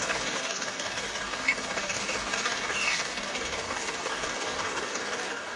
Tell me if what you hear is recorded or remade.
remade